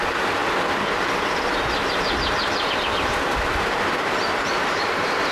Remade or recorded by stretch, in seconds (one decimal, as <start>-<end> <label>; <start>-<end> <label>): 0.0-0.4 remade; 0.4-3.6 recorded; 3.6-5.3 remade